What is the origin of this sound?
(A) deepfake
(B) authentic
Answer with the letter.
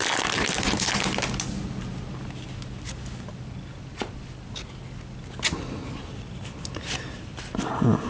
B